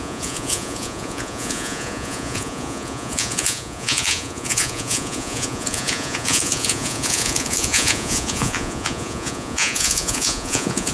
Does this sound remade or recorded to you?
remade